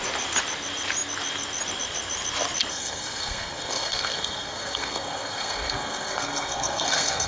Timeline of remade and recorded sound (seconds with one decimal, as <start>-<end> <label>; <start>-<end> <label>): 0.0-2.7 recorded; 2.7-7.3 remade